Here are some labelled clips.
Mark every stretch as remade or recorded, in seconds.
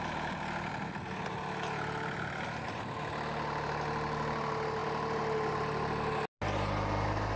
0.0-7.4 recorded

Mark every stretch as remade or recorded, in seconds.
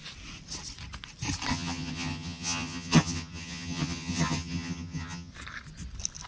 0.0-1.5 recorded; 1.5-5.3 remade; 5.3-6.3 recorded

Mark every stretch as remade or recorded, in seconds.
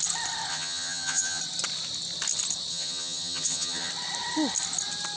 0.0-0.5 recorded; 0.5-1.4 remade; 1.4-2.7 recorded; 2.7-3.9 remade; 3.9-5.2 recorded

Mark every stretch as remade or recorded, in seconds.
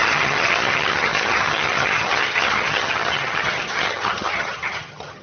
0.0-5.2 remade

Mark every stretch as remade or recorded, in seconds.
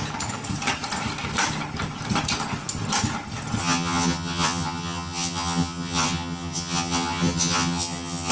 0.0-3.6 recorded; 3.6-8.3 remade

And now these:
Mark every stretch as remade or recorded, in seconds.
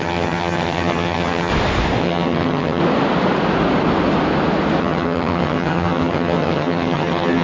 0.0-1.5 remade; 1.5-2.0 recorded; 2.0-2.8 remade; 2.8-4.8 recorded; 4.8-7.4 remade